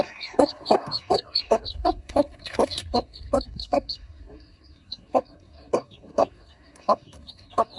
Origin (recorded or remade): remade